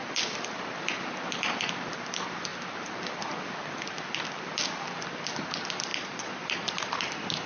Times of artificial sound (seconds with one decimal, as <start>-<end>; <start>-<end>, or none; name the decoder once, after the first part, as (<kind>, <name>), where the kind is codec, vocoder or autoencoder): 5.9-6.9 (vocoder, Vocos)